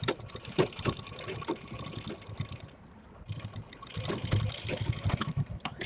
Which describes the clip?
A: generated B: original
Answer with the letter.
B